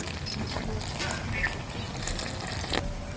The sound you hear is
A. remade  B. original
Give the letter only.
B